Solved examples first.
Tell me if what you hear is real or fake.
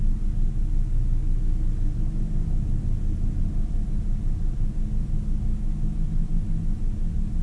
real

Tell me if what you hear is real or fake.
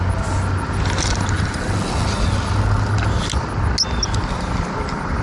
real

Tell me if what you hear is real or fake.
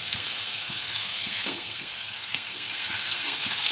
fake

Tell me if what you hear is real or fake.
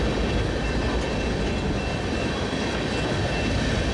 real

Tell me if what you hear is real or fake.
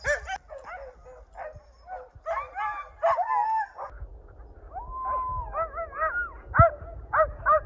real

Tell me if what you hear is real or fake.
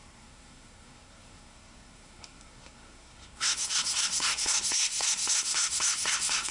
fake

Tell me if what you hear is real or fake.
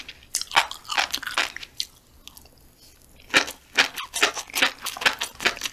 real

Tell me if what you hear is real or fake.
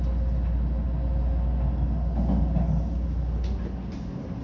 real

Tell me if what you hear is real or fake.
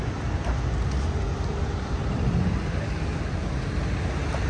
real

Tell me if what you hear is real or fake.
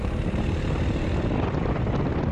real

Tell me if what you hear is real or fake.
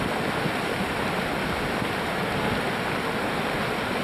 real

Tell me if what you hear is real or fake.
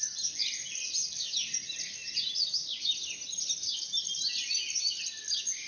real